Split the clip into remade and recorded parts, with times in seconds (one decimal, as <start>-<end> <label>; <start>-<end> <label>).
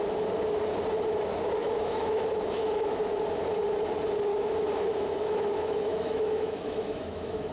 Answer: 0.0-1.6 recorded; 1.6-3.0 remade; 3.0-4.3 recorded; 4.3-7.5 remade